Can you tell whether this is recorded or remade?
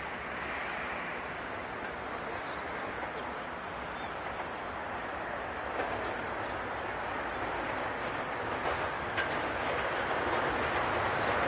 recorded